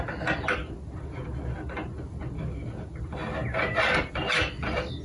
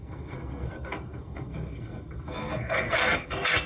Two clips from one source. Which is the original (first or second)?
first